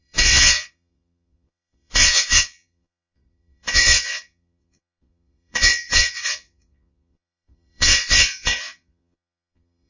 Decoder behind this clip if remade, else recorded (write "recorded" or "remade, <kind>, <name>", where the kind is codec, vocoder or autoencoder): remade, vocoder, Vocos